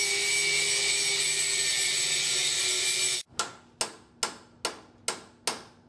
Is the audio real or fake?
real